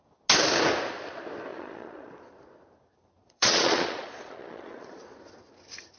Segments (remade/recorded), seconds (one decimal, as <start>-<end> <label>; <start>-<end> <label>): 0.0-1.5 recorded; 1.5-2.1 remade; 2.1-3.2 recorded; 3.2-5.0 remade; 5.0-6.0 recorded

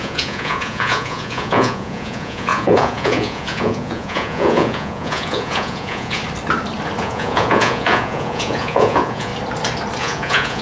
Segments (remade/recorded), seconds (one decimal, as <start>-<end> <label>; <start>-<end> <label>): 0.0-6.2 remade; 6.2-7.0 recorded; 7.0-9.3 remade; 9.3-10.0 recorded; 10.0-10.6 remade

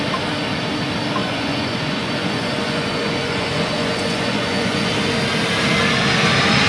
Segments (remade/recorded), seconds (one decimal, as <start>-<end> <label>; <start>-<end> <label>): 0.0-1.2 recorded; 1.2-4.9 remade; 4.9-6.7 recorded

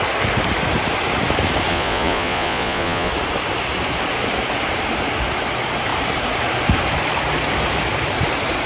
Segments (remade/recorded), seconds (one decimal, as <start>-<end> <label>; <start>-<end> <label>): 0.0-1.7 recorded; 1.7-3.1 remade; 3.1-8.7 recorded

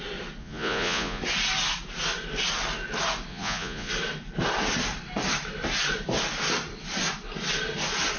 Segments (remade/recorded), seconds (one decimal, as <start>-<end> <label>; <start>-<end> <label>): 0.0-0.4 recorded; 0.4-1.2 remade; 1.2-3.3 recorded; 3.3-3.9 remade; 3.9-8.2 recorded

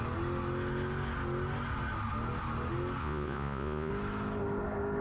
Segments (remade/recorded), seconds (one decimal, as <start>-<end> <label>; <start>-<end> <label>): 0.0-3.0 recorded; 3.0-3.9 remade; 3.9-5.0 recorded